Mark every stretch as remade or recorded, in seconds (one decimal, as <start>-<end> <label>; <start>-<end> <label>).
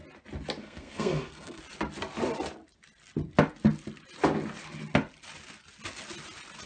0.0-0.6 recorded; 0.6-1.6 remade; 1.6-6.7 recorded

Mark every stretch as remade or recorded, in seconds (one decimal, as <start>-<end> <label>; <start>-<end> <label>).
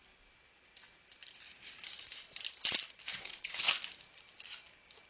0.0-3.1 recorded; 3.1-3.7 remade; 3.7-5.1 recorded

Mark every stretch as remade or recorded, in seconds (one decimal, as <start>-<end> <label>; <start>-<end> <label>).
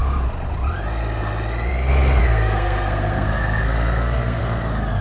0.0-2.2 recorded; 2.2-4.4 remade; 4.4-5.0 recorded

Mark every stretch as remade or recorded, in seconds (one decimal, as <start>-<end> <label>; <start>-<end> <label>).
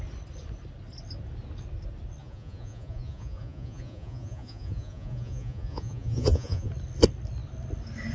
0.0-2.2 recorded; 2.2-6.7 remade; 6.7-8.1 recorded